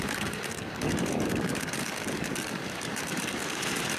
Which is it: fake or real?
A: fake